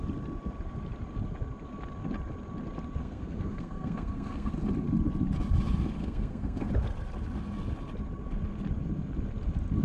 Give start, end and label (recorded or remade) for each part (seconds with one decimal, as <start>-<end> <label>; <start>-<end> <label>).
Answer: 0.0-3.0 recorded; 3.0-4.5 remade; 4.5-6.0 recorded; 6.0-6.7 remade; 6.7-9.8 recorded